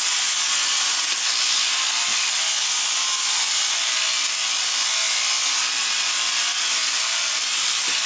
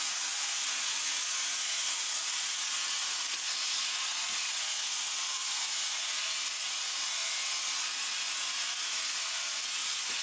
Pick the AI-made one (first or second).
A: second